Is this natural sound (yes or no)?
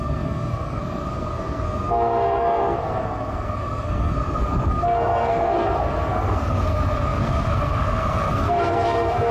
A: no